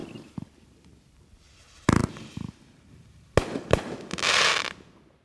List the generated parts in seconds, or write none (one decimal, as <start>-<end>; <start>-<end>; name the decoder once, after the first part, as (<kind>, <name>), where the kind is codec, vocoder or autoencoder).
0.0-1.3 (vocoder, BigVGAN v2)